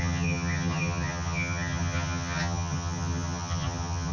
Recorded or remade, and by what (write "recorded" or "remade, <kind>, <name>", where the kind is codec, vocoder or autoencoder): remade, vocoder, HiFi-GAN